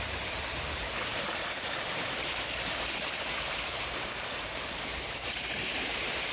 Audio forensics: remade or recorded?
remade